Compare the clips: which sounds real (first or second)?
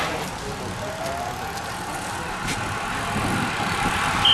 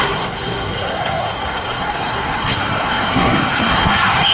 first